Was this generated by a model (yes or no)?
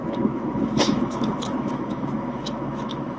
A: yes